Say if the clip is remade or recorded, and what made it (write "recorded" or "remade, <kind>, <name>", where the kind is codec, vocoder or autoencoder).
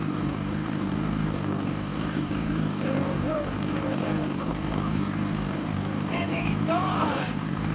remade, codec, DAC